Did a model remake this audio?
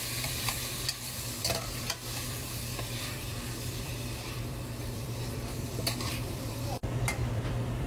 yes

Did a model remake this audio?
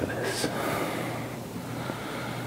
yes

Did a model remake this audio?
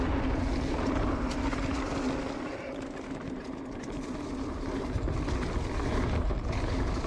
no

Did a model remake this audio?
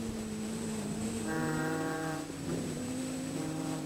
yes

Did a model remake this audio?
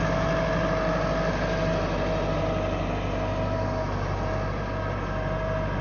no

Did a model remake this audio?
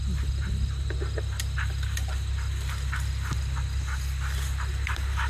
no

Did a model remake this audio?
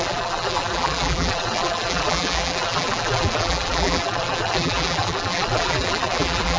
yes